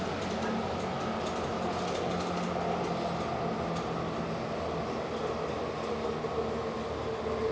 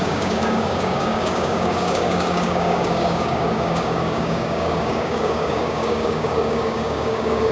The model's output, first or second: second